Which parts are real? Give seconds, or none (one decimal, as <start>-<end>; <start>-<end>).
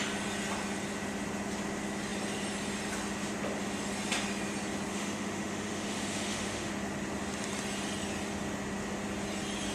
0.0-4.9; 6.7-9.7